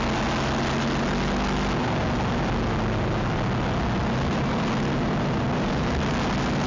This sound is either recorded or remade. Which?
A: recorded